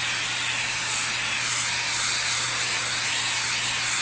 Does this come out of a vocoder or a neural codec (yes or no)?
no